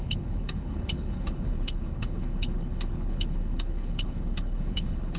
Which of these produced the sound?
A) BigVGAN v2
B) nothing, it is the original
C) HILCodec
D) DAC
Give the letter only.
C